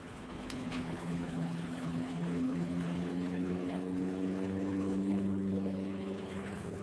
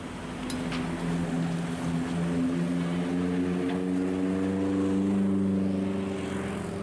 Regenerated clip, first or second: first